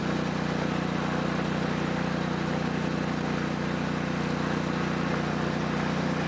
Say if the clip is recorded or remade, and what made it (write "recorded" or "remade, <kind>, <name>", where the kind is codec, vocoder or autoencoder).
recorded